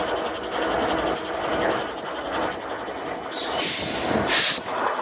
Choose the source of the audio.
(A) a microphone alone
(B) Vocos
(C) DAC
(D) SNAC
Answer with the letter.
A